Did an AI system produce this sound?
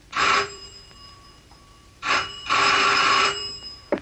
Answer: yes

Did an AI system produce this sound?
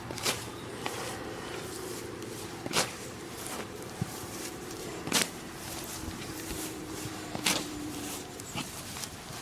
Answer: yes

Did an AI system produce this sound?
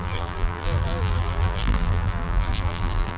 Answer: yes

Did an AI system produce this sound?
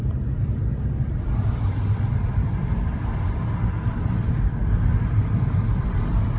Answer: yes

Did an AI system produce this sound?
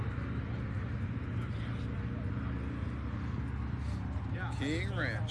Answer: no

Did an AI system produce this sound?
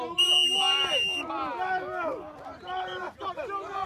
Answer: no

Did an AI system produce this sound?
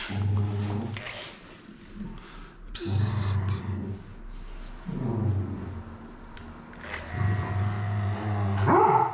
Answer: no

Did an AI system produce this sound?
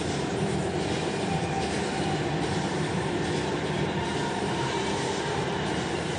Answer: yes